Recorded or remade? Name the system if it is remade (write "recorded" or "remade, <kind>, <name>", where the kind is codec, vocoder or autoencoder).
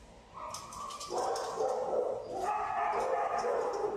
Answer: recorded